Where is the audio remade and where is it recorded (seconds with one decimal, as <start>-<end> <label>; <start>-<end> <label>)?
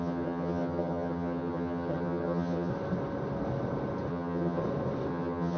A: 0.0-2.7 remade; 2.7-4.1 recorded; 4.1-4.6 remade; 4.6-5.1 recorded; 5.1-5.6 remade